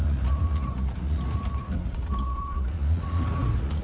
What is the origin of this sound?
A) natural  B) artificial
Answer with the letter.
B